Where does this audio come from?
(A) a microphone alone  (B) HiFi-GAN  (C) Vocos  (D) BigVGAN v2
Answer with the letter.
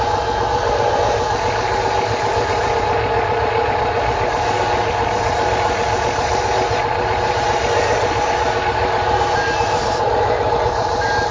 A